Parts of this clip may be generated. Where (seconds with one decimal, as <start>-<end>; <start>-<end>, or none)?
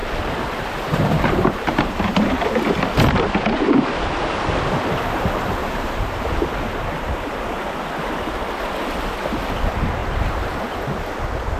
0.0-2.2; 5.6-6.3; 10.0-10.6